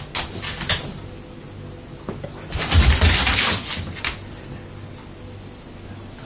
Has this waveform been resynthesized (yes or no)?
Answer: no